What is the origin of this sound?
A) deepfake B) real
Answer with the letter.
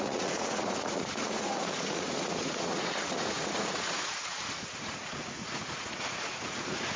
A